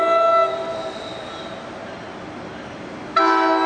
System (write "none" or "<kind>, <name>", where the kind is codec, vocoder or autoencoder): none